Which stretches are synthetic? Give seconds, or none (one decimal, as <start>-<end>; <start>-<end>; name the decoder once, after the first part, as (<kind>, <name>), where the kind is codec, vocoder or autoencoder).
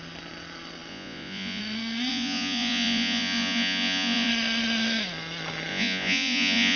0.9-1.6 (vocoder, Vocos); 2.1-4.3; 5.7-6.8